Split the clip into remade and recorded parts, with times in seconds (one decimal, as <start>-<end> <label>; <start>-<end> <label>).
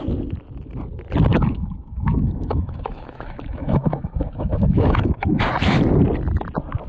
0.0-1.3 recorded; 1.3-5.4 remade; 5.4-6.9 recorded